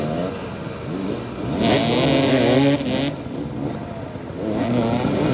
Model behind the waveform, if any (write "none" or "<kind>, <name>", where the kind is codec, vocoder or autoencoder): none